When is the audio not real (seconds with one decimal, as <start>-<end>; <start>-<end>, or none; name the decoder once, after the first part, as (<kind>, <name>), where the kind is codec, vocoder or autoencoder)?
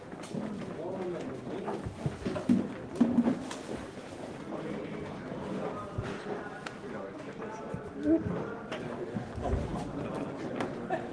none